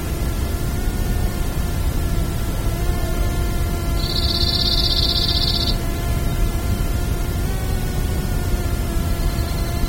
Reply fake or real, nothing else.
real